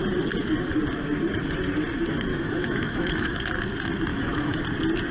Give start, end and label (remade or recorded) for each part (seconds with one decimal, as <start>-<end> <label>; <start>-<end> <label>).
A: 0.0-2.3 recorded; 2.3-3.4 remade; 3.4-4.1 recorded; 4.1-4.6 remade; 4.6-5.1 recorded